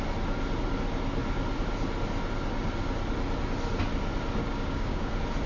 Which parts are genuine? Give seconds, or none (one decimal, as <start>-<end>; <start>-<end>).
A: 0.0-4.4; 5.1-5.5